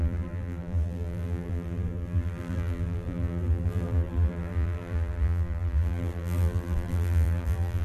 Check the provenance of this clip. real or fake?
fake